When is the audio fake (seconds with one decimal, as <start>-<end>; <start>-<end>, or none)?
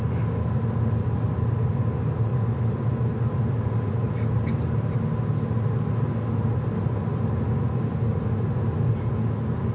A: none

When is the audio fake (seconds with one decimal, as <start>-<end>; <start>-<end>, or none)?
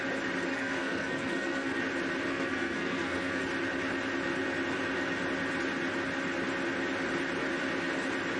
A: 0.5-1.8; 2.3-3.4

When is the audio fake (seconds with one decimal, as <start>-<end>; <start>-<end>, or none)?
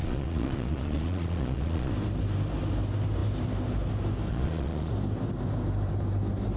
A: 0.0-1.9; 4.3-4.9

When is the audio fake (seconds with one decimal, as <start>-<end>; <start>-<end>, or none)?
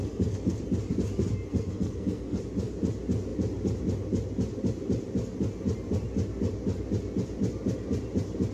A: 0.0-0.6; 1.5-2.4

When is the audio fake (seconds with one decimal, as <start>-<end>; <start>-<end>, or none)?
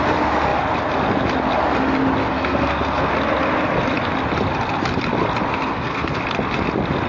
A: 2.2-3.1; 5.5-6.2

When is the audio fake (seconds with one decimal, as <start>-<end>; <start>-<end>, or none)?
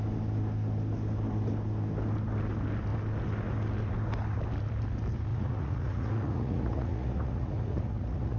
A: 5.3-8.4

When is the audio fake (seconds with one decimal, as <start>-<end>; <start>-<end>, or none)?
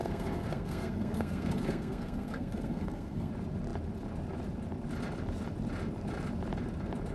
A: 0.0-3.3